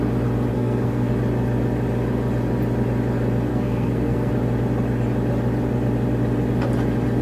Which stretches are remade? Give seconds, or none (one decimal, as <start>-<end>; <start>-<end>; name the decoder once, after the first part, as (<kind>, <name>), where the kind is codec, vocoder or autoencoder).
0.5-1.1 (codec, SNAC); 3.5-4.3